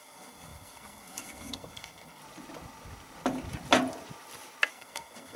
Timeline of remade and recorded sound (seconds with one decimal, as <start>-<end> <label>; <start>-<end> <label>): 0.0-2.2 remade; 2.2-4.7 recorded; 4.7-5.4 remade